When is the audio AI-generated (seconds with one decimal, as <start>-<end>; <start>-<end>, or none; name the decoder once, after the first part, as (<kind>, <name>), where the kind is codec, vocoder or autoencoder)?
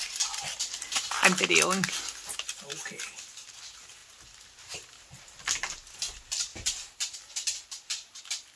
6.5-8.2 (vocoder, BigVGAN v2)